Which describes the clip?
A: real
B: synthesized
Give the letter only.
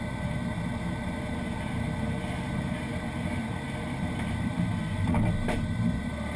B